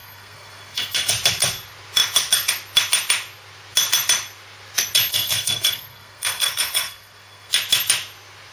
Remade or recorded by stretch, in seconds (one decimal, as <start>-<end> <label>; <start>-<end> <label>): 0.0-1.1 remade; 1.1-5.1 recorded; 5.1-7.5 remade; 7.5-8.5 recorded